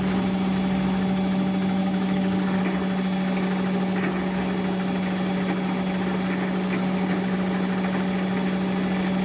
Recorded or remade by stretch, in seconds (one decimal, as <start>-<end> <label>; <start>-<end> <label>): 0.0-1.8 recorded; 1.8-2.6 remade; 2.6-9.2 recorded